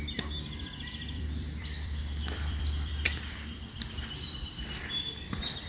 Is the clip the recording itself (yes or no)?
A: no